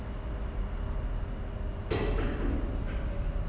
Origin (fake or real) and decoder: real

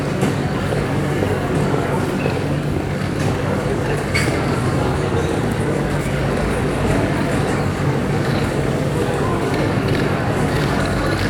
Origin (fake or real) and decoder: fake, codec, DAC